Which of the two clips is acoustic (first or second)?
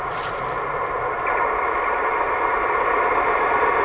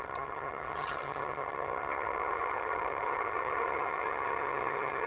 first